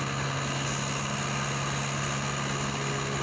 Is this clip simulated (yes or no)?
no